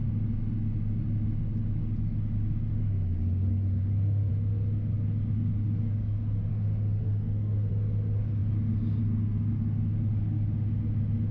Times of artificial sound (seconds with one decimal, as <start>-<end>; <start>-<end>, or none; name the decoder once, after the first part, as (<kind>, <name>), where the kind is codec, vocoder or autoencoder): 2.7-4.3 (autoencoder, DAC-VAE); 6.5-7.7